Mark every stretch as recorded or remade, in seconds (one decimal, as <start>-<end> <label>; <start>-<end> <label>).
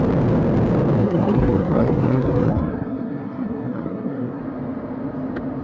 0.0-1.0 recorded; 1.0-4.4 remade; 4.4-5.6 recorded